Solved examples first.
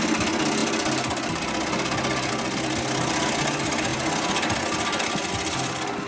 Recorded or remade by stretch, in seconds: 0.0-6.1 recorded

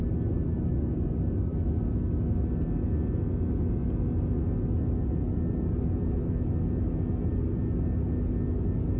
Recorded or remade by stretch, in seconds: 0.0-9.0 recorded

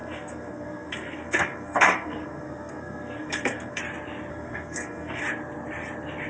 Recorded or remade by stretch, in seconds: 0.0-3.8 remade; 3.8-4.3 recorded; 4.3-5.2 remade; 5.2-6.3 recorded

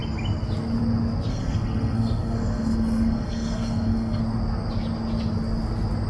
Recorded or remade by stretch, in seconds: 0.0-1.3 recorded; 1.3-4.2 remade; 4.2-6.1 recorded

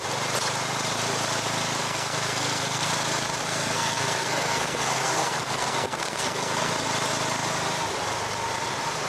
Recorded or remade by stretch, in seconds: 0.0-1.8 recorded; 1.8-2.9 remade; 2.9-3.4 recorded; 3.4-6.7 remade; 6.7-9.1 recorded

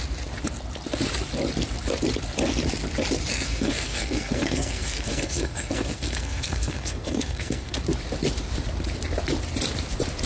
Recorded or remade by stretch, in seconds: 0.0-3.3 recorded; 3.3-7.8 remade; 7.8-10.3 recorded

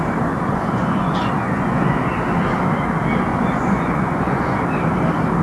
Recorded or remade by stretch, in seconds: 0.0-0.5 recorded; 0.5-2.1 remade; 2.1-3.3 recorded; 3.3-4.6 remade; 4.6-5.4 recorded